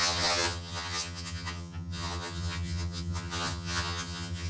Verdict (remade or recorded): remade